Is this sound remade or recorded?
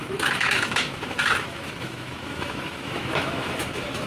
remade